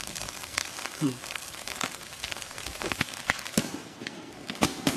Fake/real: fake